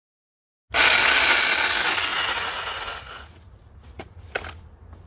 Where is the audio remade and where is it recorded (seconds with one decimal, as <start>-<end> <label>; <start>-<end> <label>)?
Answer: 0.0-2.1 recorded; 2.1-4.2 remade; 4.2-5.1 recorded